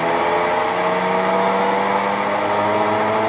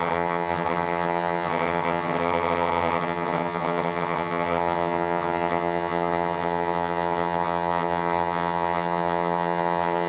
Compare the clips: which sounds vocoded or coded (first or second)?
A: second